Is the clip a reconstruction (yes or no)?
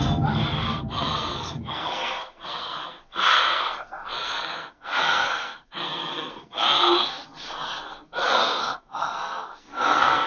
yes